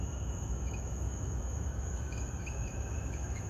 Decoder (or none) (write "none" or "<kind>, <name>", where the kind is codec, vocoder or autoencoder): autoencoder, DAC-VAE